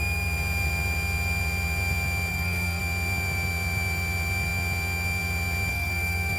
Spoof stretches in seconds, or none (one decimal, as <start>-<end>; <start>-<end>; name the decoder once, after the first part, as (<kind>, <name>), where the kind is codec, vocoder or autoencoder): 2.3-2.8 (codec, SNAC); 5.7-6.4